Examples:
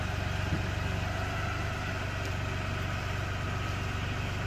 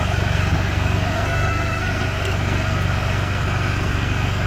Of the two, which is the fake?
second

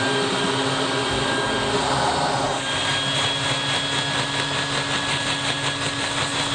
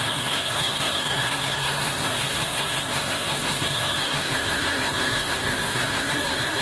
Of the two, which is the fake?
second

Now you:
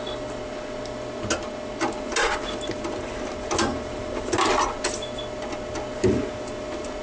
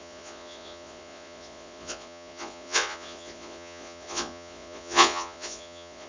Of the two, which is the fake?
second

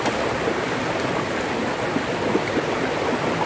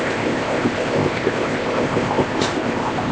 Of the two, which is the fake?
second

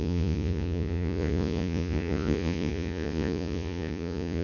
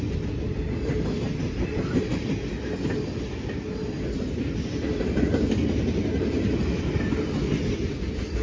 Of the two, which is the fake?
first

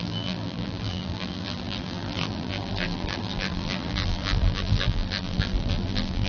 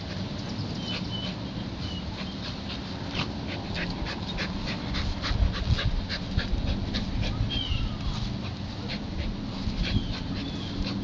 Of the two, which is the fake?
first